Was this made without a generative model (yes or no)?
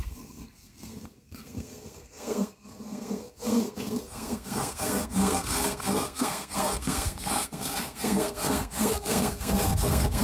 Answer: no